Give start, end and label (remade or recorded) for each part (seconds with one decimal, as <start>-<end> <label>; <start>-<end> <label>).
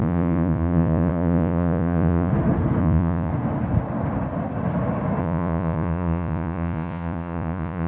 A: 0.0-2.3 remade; 2.3-2.8 recorded; 2.8-3.3 remade; 3.3-5.2 recorded; 5.2-7.9 remade